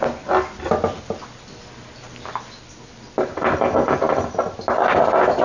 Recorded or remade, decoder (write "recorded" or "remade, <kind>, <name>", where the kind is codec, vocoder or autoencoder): recorded